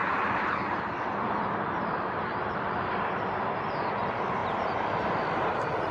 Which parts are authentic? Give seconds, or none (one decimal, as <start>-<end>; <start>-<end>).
3.1-4.4; 5.2-5.9